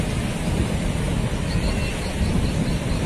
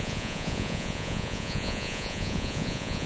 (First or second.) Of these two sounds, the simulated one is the second